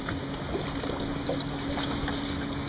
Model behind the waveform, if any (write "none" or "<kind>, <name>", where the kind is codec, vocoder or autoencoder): none